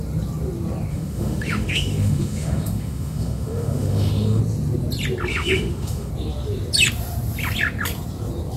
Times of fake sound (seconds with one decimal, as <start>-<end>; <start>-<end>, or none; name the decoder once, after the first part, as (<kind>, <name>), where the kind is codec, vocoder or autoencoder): 0.9-4.4 (autoencoder, DAC-VAE); 5.3-6.1